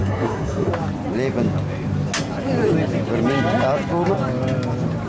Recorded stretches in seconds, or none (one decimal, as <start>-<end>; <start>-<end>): 0.7-5.1